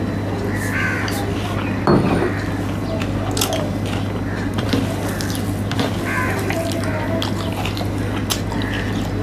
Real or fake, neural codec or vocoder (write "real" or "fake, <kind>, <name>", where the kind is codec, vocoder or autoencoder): real